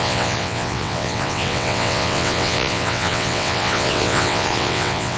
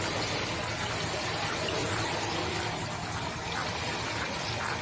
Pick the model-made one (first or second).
first